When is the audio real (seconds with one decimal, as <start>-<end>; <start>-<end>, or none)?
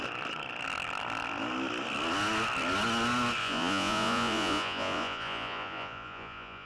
0.0-3.4